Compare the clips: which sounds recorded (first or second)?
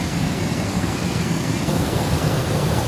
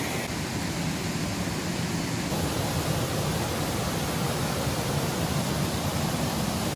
second